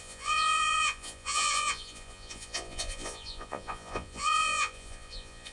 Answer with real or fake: fake